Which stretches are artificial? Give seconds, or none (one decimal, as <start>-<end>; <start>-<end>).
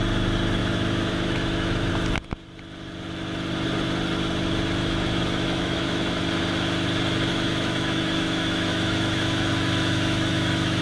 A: 0.6-1.9; 4.8-6.2; 7.3-10.8